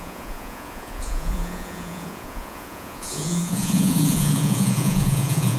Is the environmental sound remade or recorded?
remade